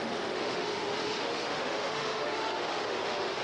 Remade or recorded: remade